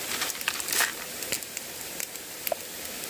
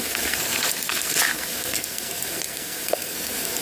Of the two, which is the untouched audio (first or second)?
first